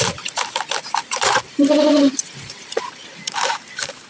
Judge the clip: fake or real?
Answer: fake